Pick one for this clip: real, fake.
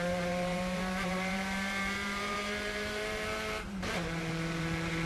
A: fake